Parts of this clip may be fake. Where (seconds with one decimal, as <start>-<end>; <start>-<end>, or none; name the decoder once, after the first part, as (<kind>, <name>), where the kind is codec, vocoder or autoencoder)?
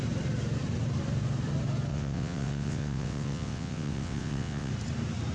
1.9-4.7 (vocoder, WaveNeXt)